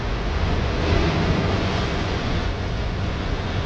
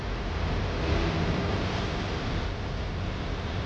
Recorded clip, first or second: second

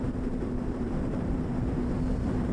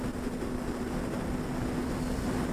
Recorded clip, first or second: second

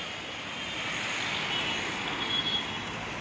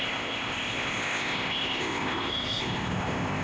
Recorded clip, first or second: first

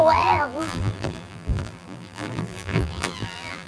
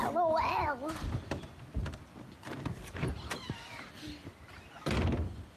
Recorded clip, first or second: second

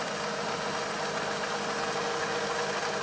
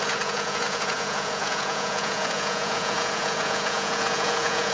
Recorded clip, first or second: first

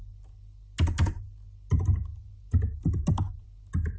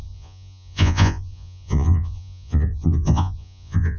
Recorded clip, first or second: first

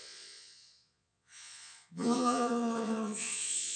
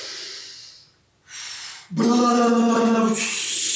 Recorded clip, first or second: second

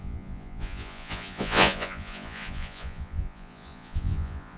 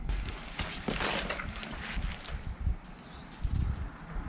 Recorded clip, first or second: second